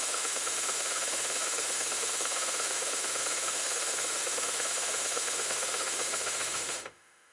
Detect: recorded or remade remade